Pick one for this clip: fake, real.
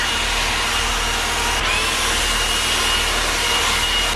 real